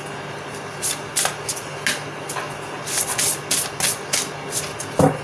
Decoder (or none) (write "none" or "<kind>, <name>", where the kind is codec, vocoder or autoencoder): none